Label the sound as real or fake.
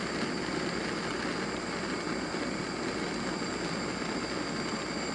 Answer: real